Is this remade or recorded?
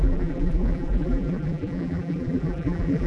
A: remade